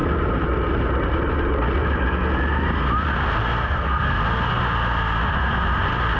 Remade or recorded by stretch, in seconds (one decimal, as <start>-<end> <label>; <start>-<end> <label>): 0.0-3.4 recorded; 3.4-4.2 remade; 4.2-6.2 recorded